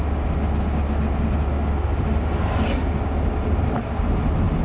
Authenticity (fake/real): real